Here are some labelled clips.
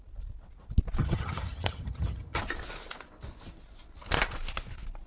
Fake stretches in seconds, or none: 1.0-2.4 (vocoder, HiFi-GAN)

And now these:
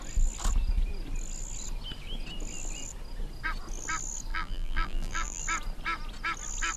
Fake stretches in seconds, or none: 4.3-5.4 (vocoder, BigVGAN v2)

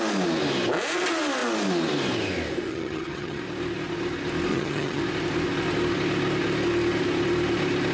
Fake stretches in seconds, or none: 2.7-3.4 (vocoder, HiFi-GAN); 4.5-5.0

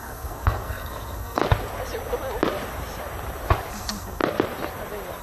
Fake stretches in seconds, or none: 0.0-1.4 (codec, SNAC); 3.7-4.2

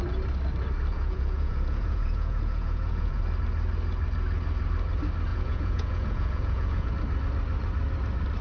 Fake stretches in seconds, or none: 0.9-3.2 (vocoder, Vocos); 5.3-6.9